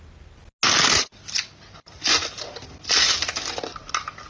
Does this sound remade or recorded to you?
recorded